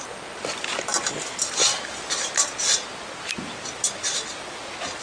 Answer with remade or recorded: recorded